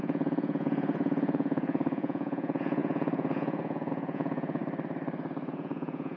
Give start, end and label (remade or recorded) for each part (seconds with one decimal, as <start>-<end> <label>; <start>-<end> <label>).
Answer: 0.0-4.6 remade; 4.6-5.5 recorded; 5.5-6.2 remade